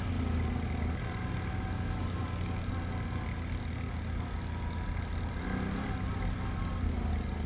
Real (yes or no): yes